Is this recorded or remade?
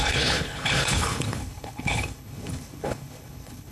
remade